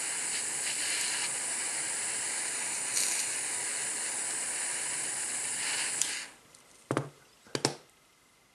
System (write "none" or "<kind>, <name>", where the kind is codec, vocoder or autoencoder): none